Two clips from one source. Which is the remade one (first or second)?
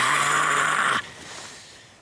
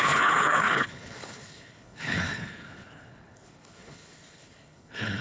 second